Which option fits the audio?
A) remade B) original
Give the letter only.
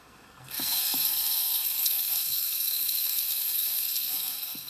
A